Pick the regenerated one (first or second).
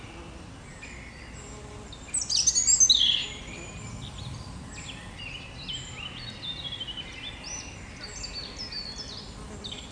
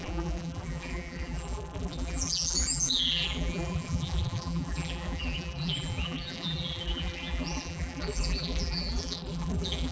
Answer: second